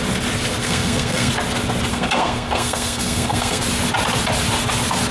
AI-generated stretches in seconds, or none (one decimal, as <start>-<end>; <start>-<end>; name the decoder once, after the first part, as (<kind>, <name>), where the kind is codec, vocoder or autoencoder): 0.6-1.3 (codec, SNAC); 1.9-3.6